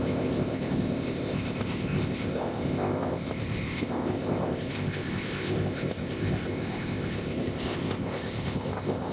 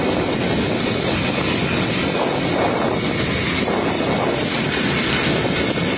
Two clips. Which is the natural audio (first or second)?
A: second